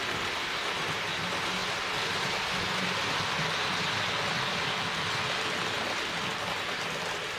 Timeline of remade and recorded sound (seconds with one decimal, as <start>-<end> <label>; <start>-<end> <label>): 0.0-7.4 recorded